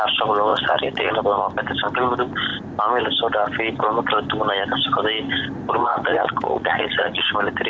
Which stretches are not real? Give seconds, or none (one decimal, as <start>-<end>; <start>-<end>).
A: 0.5-1.1; 5.8-7.3